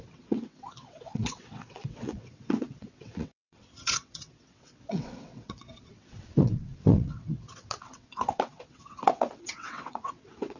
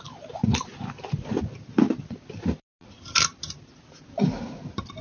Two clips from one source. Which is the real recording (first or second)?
second